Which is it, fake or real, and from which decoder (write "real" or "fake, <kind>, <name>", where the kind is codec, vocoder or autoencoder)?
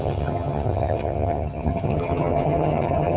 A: fake, vocoder, HiFi-GAN